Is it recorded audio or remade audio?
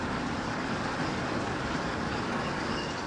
remade